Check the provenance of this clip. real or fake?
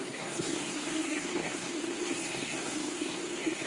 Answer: fake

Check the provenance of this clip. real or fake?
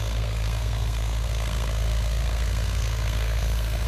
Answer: fake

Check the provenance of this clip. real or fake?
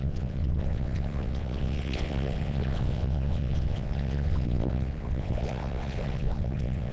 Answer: fake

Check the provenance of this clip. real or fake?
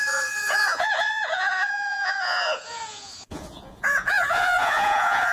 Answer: fake